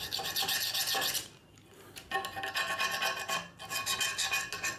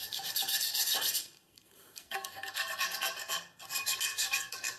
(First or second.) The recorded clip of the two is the first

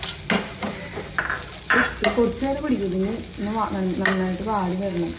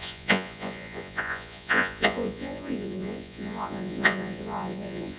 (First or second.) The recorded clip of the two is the first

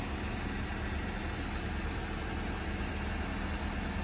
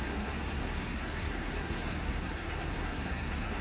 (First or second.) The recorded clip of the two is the first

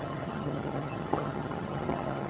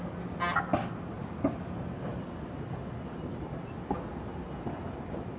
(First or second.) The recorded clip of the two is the second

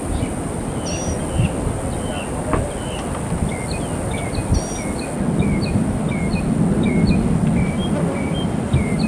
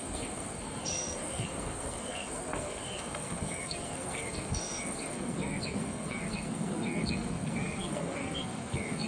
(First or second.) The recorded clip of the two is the first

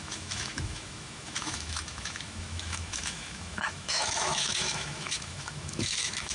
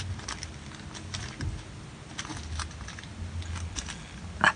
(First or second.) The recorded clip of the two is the second